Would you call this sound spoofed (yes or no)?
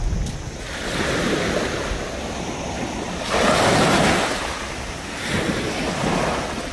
no